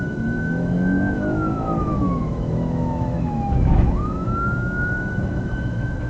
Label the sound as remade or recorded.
remade